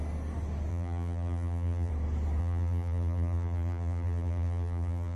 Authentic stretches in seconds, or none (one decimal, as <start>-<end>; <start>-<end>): 0.0-0.7; 1.9-2.4